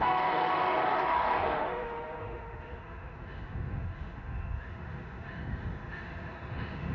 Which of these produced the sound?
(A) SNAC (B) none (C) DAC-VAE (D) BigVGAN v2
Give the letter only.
C